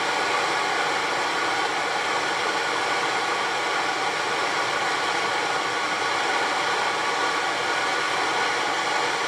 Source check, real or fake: real